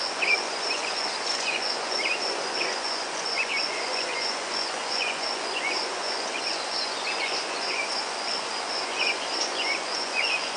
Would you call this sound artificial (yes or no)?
yes